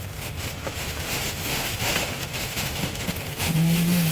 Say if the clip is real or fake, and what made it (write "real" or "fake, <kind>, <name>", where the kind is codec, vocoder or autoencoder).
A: fake, autoencoder, DAC-VAE